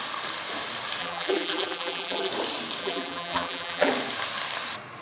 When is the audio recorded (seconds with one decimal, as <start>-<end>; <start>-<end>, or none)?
0.0-1.0; 2.3-2.8; 3.9-5.0